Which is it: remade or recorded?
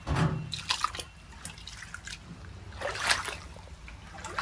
recorded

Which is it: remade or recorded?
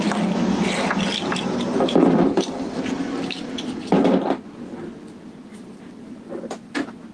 recorded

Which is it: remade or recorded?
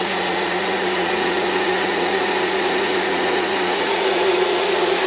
remade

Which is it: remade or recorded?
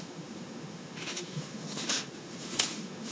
remade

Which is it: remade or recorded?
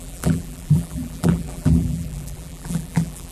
remade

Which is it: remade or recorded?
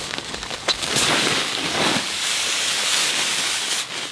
remade